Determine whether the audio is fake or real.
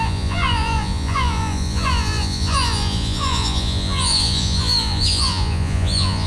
fake